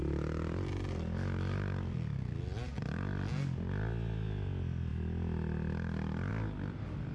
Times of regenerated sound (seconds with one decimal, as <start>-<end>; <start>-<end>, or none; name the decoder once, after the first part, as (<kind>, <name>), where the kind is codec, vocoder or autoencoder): none